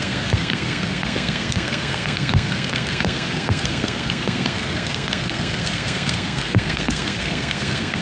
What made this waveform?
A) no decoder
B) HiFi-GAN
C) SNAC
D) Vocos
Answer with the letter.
C